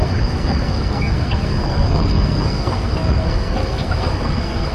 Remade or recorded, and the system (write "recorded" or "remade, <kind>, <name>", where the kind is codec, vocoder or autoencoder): remade, codec, SNAC